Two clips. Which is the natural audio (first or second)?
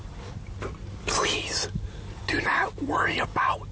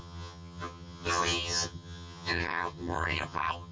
first